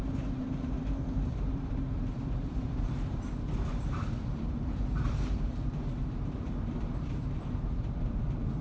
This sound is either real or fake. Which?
fake